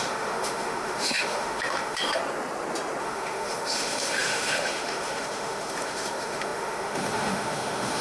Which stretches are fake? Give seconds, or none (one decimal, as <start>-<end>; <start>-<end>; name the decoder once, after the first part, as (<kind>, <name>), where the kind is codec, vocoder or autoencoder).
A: 0.0-2.2 (autoencoder, DAC-VAE); 3.0-8.0